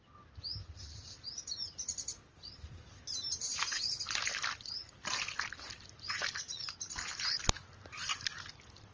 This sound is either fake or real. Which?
real